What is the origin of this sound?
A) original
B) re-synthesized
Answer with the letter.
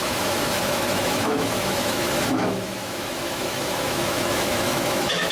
B